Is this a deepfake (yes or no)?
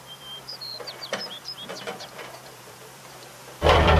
yes